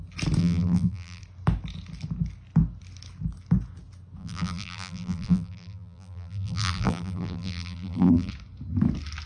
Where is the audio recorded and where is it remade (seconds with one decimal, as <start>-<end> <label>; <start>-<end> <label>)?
0.0-0.4 recorded; 0.4-1.2 remade; 1.2-4.2 recorded; 4.2-8.3 remade; 8.3-9.3 recorded